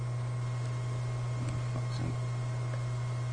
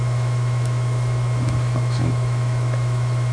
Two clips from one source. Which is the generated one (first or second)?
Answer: second